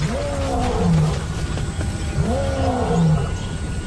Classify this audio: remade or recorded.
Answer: recorded